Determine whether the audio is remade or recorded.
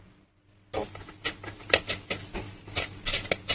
recorded